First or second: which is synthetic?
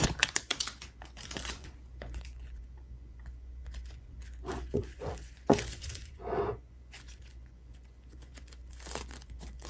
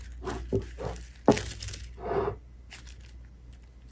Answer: first